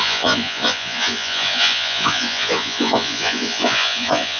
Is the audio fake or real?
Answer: fake